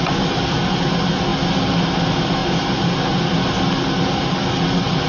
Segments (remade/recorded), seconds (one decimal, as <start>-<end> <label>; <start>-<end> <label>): 0.0-5.1 recorded